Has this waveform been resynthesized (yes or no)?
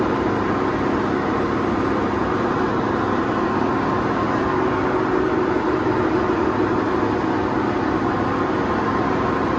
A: no